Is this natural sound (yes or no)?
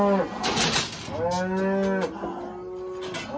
yes